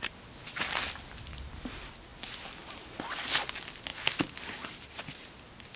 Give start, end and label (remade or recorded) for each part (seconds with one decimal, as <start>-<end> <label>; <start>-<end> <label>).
0.0-5.8 recorded

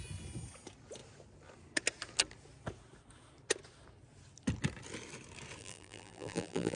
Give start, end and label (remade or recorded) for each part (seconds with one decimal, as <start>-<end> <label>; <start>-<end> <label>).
0.0-5.6 recorded; 5.6-6.8 remade

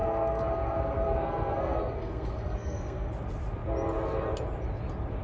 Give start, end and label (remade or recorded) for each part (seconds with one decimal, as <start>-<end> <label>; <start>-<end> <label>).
0.0-3.1 remade; 3.1-5.2 recorded

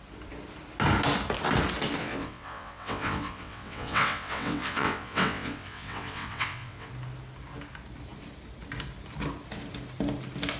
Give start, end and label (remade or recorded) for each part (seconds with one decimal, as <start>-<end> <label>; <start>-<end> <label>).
0.0-2.0 recorded; 2.0-6.9 remade; 6.9-10.6 recorded

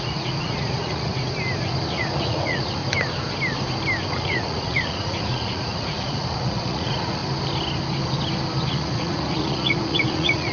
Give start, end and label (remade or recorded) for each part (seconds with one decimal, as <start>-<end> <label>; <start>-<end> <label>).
0.0-1.1 remade; 1.1-1.9 recorded; 1.9-2.8 remade; 2.8-4.1 recorded; 4.1-7.2 remade; 7.2-8.7 recorded; 8.7-10.5 remade